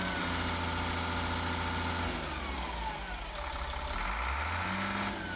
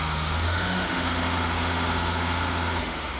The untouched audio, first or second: first